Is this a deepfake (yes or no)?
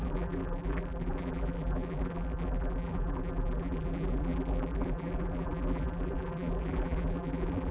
yes